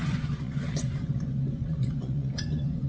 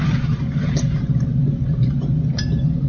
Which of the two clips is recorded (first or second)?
second